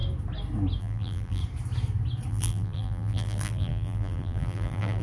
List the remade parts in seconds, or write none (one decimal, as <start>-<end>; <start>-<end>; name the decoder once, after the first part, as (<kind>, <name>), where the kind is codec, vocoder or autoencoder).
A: 0.8-1.4 (vocoder, BigVGAN v2); 2.3-5.0